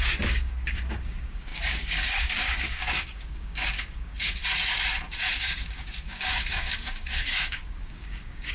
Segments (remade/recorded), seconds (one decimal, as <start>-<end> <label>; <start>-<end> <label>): 0.0-4.4 remade; 4.4-5.4 recorded; 5.4-8.5 remade